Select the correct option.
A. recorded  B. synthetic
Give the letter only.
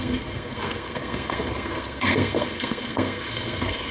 B